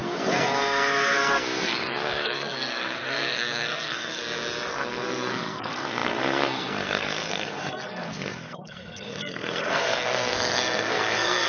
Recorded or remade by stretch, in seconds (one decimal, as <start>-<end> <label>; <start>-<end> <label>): 0.0-4.2 remade; 4.2-4.7 recorded; 4.7-11.5 remade